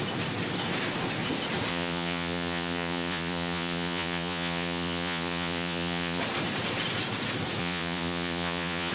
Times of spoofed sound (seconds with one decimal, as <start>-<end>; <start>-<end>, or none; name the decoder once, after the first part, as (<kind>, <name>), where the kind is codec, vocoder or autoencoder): 1.7-6.2 (vocoder, Vocos); 7.6-8.9